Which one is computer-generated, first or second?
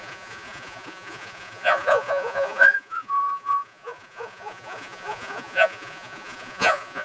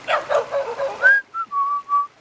first